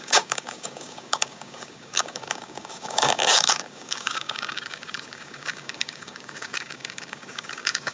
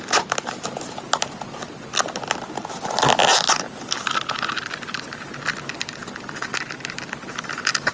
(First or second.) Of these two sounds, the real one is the second